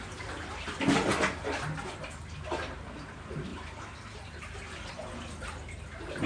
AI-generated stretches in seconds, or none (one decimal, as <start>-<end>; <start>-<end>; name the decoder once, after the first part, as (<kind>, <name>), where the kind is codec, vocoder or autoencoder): none